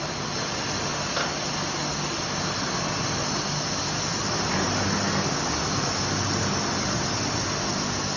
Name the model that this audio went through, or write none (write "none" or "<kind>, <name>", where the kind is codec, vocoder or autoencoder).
none